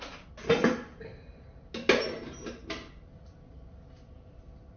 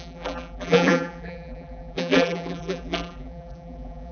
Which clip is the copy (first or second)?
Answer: second